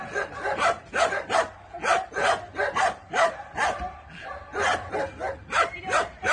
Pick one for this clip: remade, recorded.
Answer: recorded